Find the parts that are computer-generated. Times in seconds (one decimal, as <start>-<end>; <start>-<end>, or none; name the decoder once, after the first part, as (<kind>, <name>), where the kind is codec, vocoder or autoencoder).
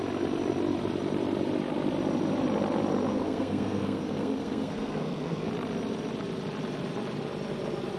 3.1-5.5 (codec, SNAC)